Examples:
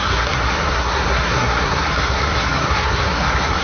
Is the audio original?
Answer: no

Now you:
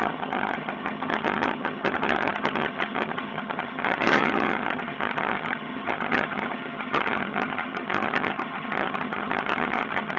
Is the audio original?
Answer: no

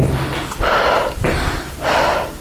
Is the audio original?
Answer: yes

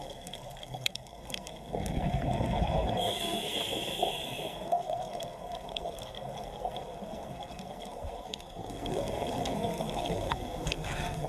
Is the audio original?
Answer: no